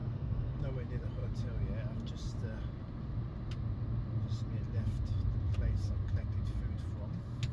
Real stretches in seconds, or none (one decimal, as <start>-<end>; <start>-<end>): 0.6-7.5